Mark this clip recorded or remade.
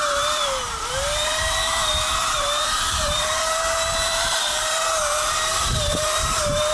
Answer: remade